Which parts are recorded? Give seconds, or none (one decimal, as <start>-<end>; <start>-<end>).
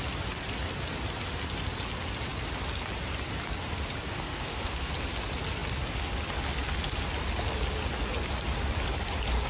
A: 0.0-4.3; 4.9-9.5